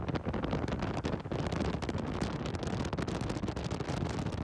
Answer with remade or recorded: recorded